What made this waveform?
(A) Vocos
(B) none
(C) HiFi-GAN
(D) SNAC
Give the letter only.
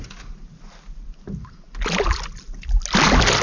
B